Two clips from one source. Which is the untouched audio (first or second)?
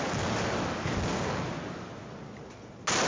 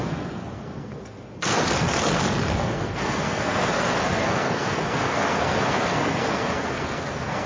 first